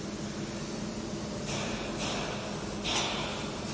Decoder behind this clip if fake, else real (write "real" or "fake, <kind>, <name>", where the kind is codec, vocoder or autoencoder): real